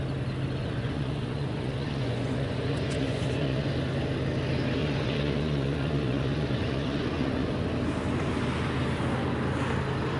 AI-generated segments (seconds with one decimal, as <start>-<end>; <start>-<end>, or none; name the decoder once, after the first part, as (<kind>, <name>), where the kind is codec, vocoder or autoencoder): 0.6-3.7 (vocoder, Vocos); 4.8-7.5